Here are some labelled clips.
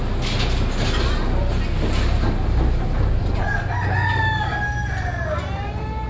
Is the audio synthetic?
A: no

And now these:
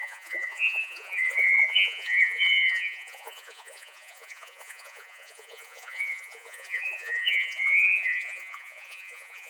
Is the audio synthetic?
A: yes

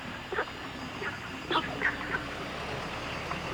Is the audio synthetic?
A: no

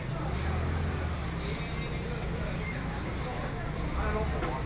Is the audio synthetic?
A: no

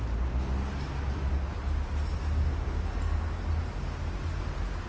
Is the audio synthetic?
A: no